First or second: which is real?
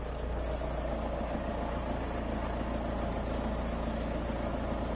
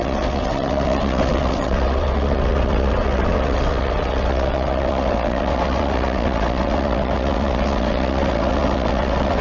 first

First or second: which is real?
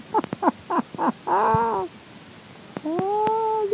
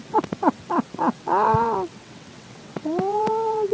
first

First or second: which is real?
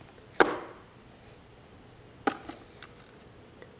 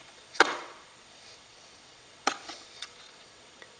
first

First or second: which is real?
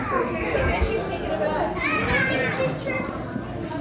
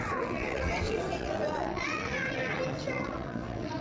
first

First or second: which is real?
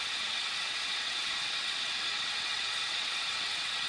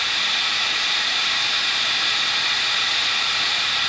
second